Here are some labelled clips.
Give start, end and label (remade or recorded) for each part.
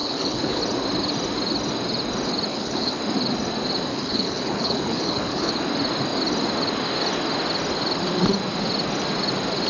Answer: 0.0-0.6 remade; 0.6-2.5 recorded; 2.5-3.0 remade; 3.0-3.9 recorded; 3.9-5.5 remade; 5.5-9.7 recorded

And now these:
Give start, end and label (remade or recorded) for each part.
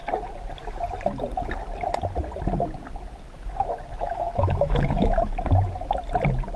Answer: 0.0-4.0 recorded; 4.0-5.3 remade; 5.3-6.6 recorded